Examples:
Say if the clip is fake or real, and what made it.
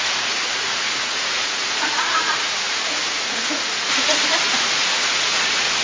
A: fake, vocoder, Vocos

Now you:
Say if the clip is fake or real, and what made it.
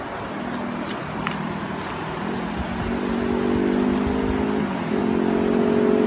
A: real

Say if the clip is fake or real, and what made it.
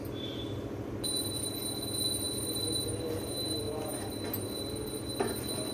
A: real